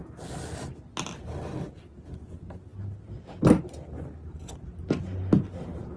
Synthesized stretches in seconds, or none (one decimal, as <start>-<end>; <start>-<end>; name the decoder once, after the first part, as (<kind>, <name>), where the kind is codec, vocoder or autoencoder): none